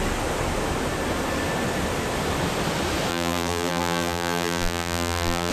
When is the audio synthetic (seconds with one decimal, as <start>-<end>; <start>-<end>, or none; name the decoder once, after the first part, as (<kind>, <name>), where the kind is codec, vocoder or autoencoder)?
3.1-5.5 (vocoder, BigVGAN v2)